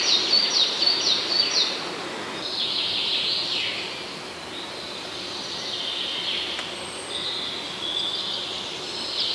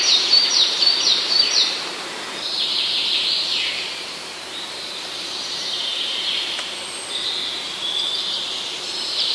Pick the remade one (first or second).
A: second